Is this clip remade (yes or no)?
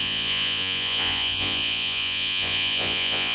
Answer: yes